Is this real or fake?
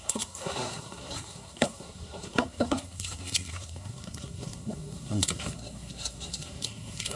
fake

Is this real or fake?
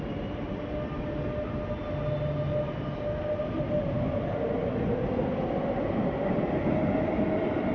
real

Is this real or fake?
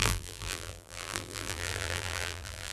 fake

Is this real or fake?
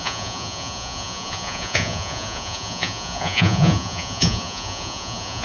fake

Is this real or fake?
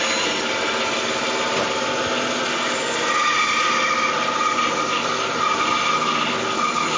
real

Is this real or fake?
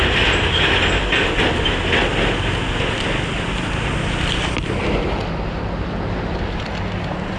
real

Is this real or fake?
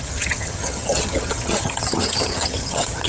fake